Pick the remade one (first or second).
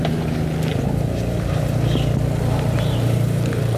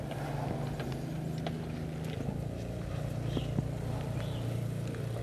first